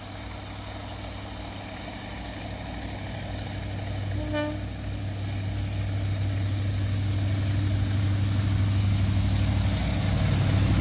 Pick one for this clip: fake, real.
real